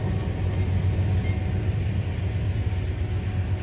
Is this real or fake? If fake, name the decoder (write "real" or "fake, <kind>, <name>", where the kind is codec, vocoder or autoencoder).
real